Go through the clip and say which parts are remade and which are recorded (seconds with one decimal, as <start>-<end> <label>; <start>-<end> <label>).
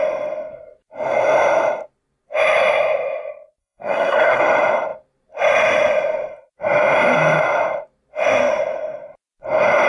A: 0.0-3.6 recorded; 3.6-4.4 remade; 4.4-9.9 recorded